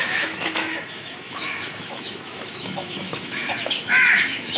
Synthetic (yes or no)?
yes